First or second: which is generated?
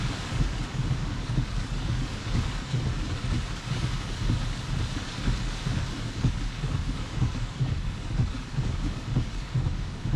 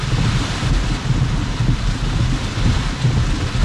first